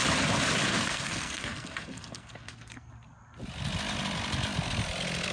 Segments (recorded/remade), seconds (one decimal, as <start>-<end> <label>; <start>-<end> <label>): 0.0-0.7 recorded; 0.7-2.9 remade; 2.9-5.3 recorded